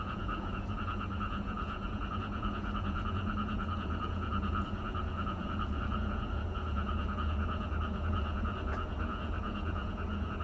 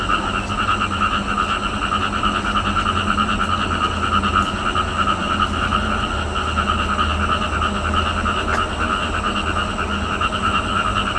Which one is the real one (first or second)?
second